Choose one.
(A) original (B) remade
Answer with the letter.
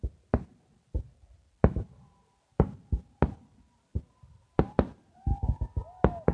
A